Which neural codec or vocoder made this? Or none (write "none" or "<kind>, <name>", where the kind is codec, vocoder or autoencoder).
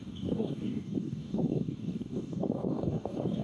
codec, DAC